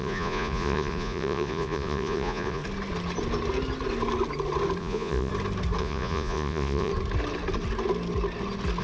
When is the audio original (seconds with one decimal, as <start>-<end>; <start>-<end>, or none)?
2.6-4.8; 5.3-5.8; 6.9-8.8